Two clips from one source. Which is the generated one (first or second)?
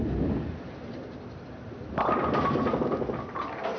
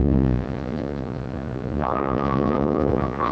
second